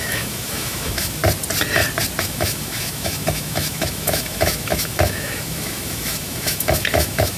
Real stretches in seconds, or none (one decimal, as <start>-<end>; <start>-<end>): 1.2-2.2